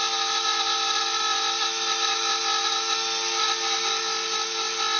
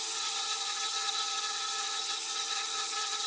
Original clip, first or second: first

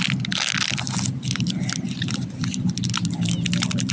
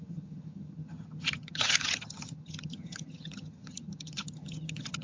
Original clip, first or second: first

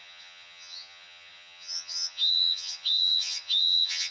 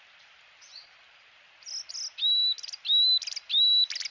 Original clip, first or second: second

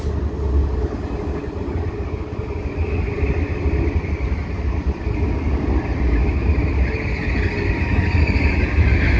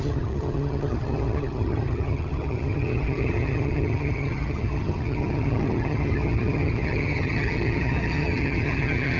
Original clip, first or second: first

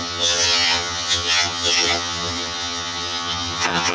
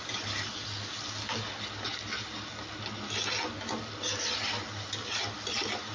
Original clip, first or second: second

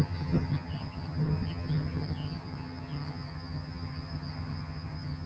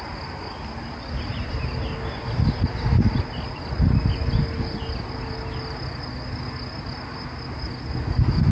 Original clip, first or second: second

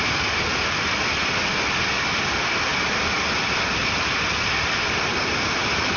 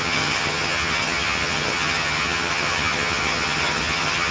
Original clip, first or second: first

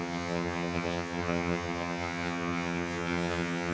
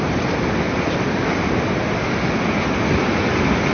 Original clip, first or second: second